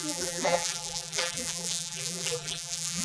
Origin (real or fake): fake